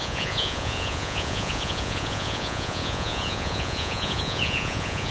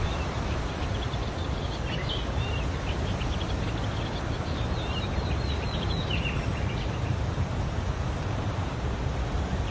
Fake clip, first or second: first